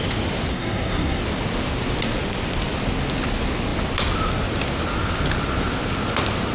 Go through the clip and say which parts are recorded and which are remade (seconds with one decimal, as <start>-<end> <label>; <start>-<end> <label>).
0.0-0.5 recorded; 0.5-1.2 remade; 1.2-6.5 recorded